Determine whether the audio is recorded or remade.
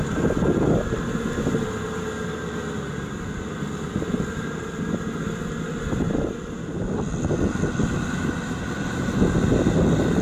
recorded